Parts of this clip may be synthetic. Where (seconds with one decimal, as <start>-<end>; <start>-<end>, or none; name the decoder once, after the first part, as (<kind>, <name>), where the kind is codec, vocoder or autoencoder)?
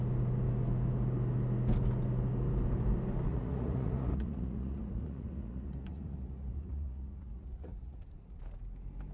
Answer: 3.3-8.4 (vocoder, Vocos)